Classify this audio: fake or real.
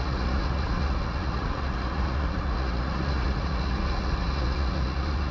fake